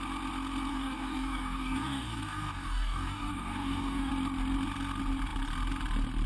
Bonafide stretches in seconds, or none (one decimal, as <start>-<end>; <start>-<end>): 0.0-0.7; 4.1-6.3